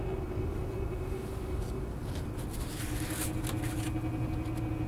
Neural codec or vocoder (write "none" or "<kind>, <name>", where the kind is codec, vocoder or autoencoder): none